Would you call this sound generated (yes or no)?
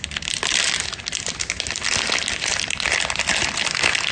no